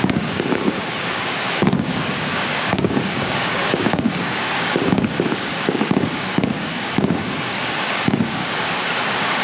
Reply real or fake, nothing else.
fake